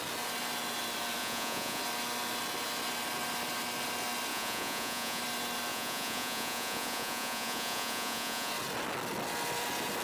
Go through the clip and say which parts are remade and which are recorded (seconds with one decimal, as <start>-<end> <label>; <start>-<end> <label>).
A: 0.0-1.2 recorded; 1.2-1.8 remade; 1.8-4.3 recorded; 4.3-5.2 remade; 5.2-5.7 recorded; 5.7-8.5 remade; 8.5-10.0 recorded